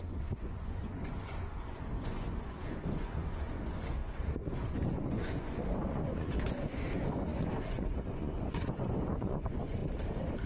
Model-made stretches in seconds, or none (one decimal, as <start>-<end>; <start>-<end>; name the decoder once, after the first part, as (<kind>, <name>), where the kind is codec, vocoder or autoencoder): 0.0-9.8 (vocoder, Vocos)